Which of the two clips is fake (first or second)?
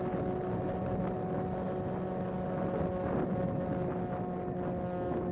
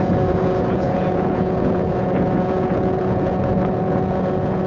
second